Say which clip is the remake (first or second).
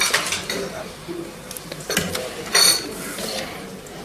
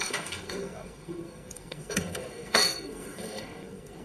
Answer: second